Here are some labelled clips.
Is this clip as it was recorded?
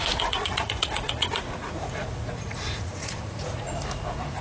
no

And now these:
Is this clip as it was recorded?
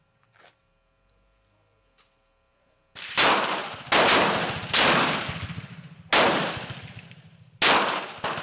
yes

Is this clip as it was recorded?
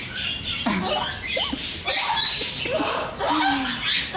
yes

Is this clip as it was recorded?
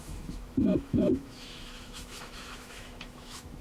no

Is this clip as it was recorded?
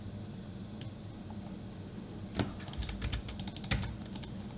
yes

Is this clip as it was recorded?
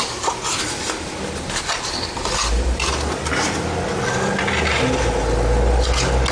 yes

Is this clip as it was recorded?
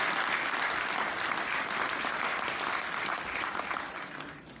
yes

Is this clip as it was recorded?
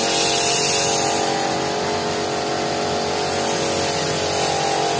yes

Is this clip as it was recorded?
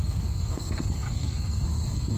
no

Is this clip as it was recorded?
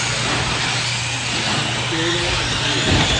yes